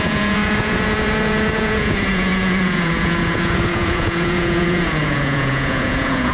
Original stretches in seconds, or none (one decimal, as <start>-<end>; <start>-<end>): none